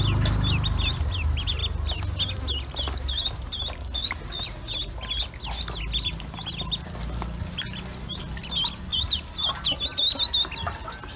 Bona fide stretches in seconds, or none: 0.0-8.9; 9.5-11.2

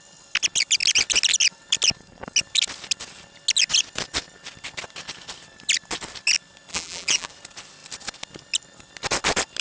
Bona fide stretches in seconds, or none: 0.0-6.7; 7.3-9.6